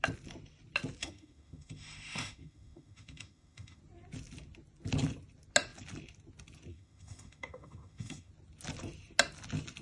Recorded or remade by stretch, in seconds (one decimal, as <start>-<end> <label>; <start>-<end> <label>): 0.0-1.0 recorded; 1.0-3.8 remade; 3.8-6.7 recorded; 6.7-8.3 remade; 8.3-9.8 recorded

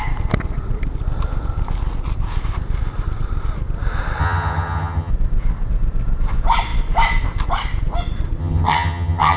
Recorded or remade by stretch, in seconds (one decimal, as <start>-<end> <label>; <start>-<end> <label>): 0.0-4.2 recorded; 4.2-5.1 remade; 5.1-8.4 recorded; 8.4-9.4 remade

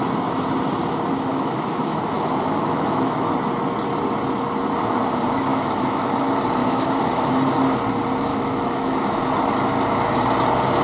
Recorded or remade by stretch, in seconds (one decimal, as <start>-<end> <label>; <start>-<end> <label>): 0.0-1.3 recorded; 1.3-3.3 remade; 3.3-5.5 recorded; 5.5-6.0 remade; 6.0-6.6 recorded; 6.6-7.3 remade; 7.3-8.3 recorded; 8.3-9.2 remade; 9.2-10.8 recorded

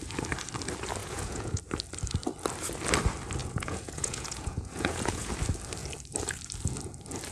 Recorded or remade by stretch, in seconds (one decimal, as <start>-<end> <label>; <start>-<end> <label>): 0.0-1.0 recorded; 1.0-1.6 remade; 1.6-3.4 recorded; 3.4-5.3 remade; 5.3-7.3 recorded

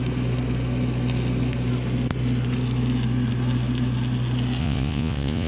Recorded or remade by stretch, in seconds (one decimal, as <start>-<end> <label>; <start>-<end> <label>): 0.0-4.6 recorded; 4.6-5.5 remade

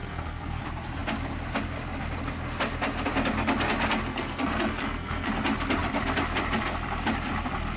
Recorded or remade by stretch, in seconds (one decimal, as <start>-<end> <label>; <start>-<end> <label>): 0.0-0.6 remade; 0.6-4.1 recorded; 4.1-5.3 remade; 5.3-7.8 recorded